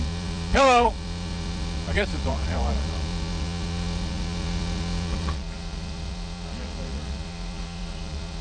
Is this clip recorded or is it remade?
remade